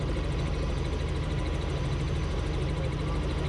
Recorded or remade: recorded